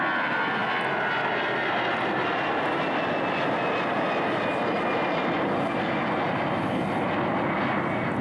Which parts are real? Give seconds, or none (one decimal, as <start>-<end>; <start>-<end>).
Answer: 0.0-8.2

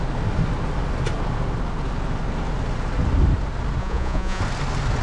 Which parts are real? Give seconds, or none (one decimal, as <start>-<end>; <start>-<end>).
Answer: 0.0-3.8; 4.4-5.0